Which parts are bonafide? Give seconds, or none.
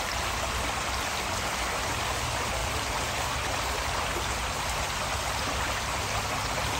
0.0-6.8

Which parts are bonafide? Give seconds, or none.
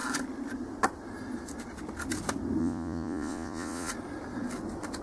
0.0-2.6; 3.9-5.0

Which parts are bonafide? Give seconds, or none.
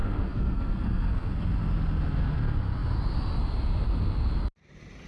1.3-5.1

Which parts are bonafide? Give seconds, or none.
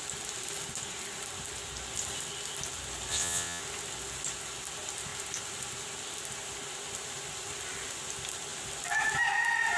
0.0-3.1; 3.6-9.8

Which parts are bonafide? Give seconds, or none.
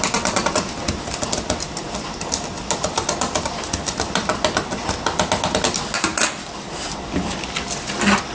0.0-8.3